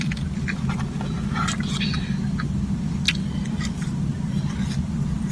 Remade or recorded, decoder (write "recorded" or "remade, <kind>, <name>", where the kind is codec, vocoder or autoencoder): recorded